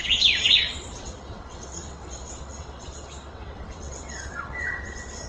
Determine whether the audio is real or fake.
fake